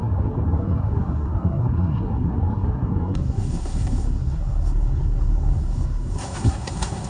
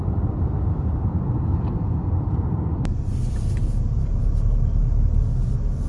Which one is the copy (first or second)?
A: first